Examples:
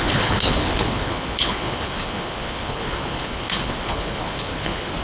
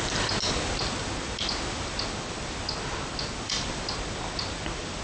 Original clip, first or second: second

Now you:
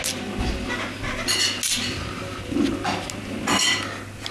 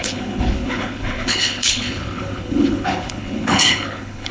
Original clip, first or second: first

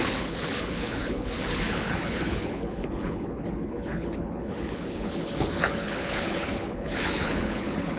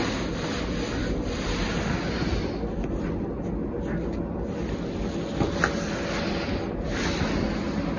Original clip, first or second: second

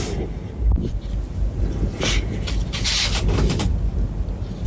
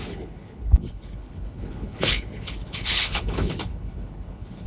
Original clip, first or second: first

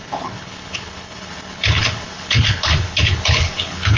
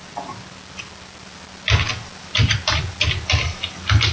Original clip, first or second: second